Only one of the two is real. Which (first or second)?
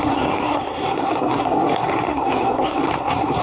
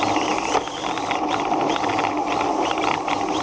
second